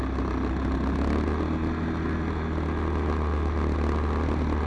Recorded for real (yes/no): yes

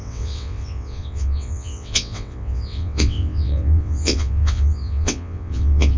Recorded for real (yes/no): no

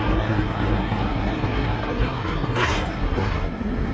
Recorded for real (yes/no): no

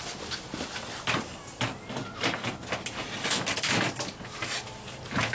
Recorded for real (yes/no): yes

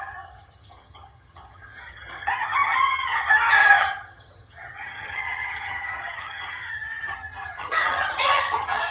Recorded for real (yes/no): no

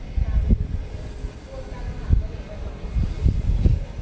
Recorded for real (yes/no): yes